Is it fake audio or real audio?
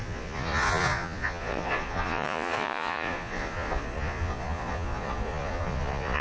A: fake